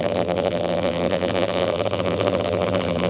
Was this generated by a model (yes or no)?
yes